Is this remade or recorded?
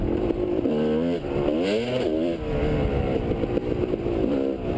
recorded